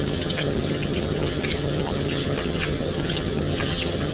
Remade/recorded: remade